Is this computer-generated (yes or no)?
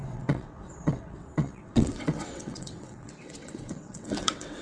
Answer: yes